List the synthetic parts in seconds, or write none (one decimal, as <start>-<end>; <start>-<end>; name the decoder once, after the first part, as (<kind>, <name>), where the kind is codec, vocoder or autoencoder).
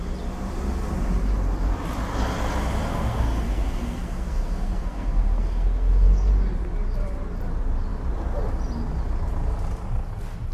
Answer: 2.9-6.3 (codec, SNAC)